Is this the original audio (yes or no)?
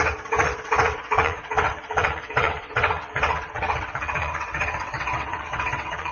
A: no